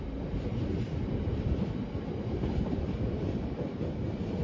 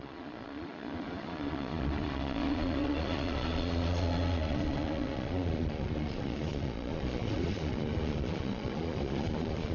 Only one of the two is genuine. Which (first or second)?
first